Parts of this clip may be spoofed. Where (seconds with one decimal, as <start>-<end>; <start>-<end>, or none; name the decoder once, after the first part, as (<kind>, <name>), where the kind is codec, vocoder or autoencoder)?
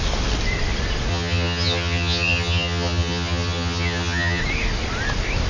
1.1-4.4 (vocoder, HiFi-GAN)